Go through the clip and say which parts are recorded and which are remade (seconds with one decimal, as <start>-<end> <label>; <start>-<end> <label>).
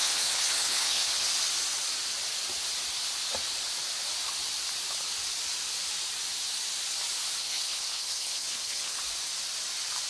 0.0-1.3 remade; 1.3-7.4 recorded; 7.4-9.0 remade; 9.0-10.1 recorded